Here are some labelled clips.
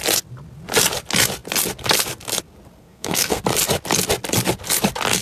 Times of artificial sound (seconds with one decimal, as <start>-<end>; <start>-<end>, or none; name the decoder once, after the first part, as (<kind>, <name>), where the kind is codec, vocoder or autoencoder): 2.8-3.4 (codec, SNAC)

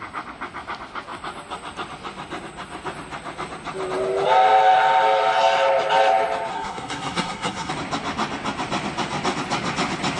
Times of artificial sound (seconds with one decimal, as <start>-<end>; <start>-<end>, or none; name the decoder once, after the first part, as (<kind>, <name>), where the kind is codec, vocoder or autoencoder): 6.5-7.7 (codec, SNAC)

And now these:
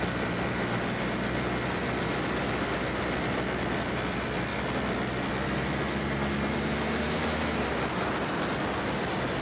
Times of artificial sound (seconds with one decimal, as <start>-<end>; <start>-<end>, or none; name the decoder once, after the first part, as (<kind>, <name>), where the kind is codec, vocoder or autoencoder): none

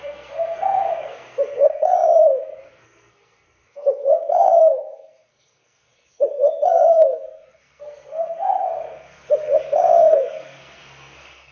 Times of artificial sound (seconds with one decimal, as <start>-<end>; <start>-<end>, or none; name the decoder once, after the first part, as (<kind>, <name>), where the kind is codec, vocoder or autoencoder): 0.0-11.5 (codec, SNAC)

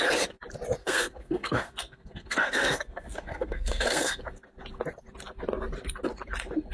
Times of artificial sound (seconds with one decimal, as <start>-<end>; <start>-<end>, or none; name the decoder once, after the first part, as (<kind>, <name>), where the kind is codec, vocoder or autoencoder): 0.8-4.2 (codec, SNAC)

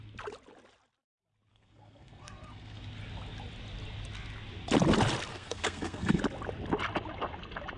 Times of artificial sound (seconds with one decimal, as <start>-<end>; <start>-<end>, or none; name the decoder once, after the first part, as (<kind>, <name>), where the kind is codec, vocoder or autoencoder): 1.5-2.8 (codec, SNAC); 5.3-6.2

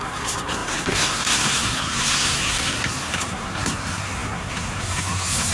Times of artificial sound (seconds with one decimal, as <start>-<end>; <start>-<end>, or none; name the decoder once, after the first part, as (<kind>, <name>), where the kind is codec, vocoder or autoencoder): 0.0-5.5 (codec, SNAC)

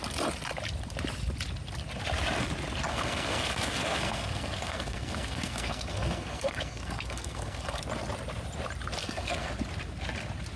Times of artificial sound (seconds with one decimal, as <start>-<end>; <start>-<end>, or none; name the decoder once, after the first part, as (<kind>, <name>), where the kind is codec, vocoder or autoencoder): 2.9-7.8 (codec, SNAC); 9.0-9.5